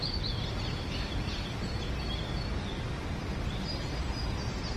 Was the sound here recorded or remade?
recorded